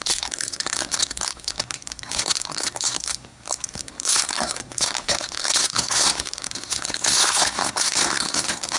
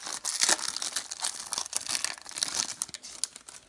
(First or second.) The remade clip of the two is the first